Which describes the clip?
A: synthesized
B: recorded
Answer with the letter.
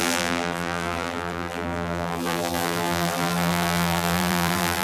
A